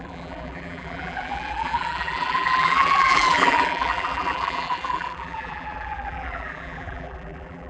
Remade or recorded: remade